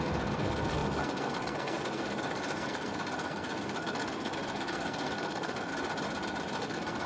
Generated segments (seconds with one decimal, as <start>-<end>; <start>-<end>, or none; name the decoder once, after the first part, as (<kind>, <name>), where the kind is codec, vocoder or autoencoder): 0.0-5.7 (codec, SNAC); 6.6-7.1

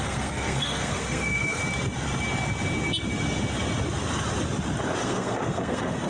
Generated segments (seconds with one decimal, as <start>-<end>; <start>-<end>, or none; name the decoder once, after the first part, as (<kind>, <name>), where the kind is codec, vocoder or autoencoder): 0.0-1.6 (codec, SNAC); 5.0-6.1